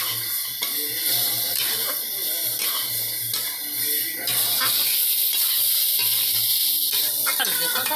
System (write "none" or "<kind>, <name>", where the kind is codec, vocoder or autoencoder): none